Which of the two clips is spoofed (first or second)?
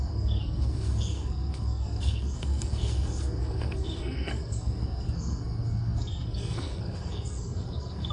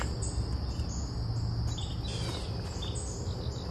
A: first